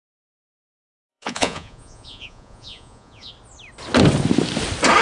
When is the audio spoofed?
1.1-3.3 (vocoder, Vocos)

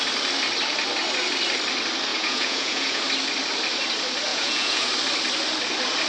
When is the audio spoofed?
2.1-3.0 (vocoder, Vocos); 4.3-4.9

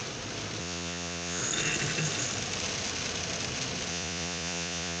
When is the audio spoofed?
0.6-1.4 (vocoder, Vocos); 3.9-5.0